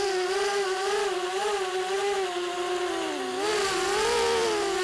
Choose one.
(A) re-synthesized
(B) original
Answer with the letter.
B